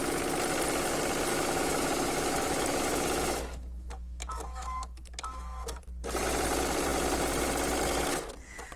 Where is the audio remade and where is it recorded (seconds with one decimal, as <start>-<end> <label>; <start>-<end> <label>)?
0.0-1.3 recorded; 1.3-5.8 remade; 5.8-8.8 recorded